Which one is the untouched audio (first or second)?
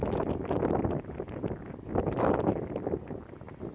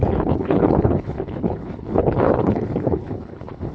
first